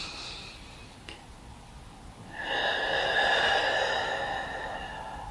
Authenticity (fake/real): real